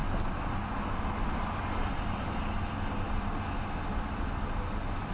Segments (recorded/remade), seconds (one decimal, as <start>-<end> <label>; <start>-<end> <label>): 0.0-5.1 recorded